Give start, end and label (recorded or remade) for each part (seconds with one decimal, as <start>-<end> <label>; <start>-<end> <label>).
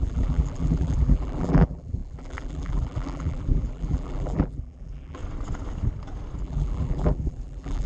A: 0.0-5.2 remade; 5.2-6.4 recorded; 6.4-7.9 remade